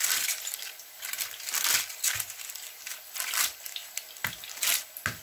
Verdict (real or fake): real